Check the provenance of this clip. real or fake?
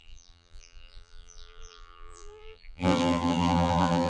fake